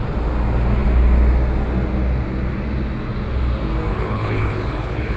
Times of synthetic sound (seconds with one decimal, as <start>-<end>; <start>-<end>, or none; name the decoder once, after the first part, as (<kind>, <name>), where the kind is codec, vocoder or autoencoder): 3.9-5.2 (codec, HILCodec)